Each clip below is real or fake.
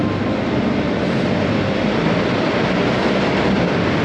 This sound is fake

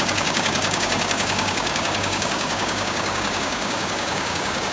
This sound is fake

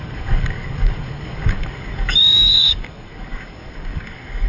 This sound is fake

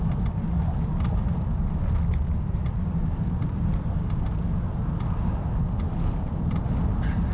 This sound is real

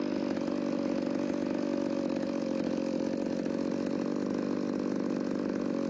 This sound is real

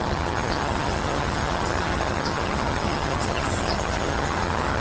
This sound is fake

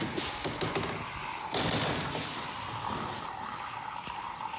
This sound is real